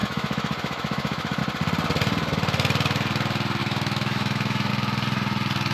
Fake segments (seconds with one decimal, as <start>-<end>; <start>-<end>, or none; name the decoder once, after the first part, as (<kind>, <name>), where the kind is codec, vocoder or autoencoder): 0.0-1.4 (autoencoder, DAC-VAE); 3.6-4.7